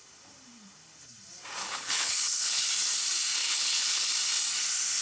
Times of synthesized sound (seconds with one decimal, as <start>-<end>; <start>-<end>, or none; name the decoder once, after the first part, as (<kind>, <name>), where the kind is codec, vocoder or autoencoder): 1.6-2.7 (codec, HILCodec); 3.4-4.1